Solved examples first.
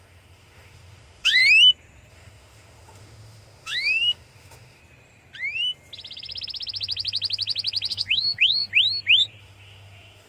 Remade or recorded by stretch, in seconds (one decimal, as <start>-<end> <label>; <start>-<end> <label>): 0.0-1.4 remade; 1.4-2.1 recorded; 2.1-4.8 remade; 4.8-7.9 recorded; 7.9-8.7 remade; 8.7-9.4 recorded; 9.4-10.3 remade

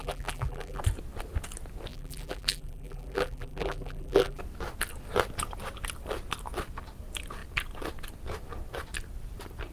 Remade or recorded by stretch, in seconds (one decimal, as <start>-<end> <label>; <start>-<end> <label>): 0.0-0.8 remade; 0.8-1.9 recorded; 1.9-4.4 remade; 4.4-9.7 recorded

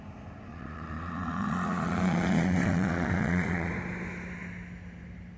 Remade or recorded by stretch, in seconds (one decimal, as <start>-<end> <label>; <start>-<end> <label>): 0.0-0.5 recorded; 0.5-3.7 remade; 3.7-5.4 recorded